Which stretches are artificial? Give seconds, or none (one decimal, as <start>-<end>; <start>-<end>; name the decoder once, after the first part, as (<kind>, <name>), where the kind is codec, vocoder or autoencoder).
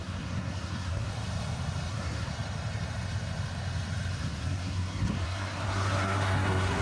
0.0-1.1 (codec, SNAC); 1.9-2.3; 4.2-6.8